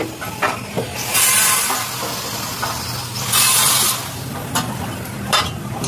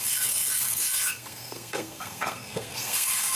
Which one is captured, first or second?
first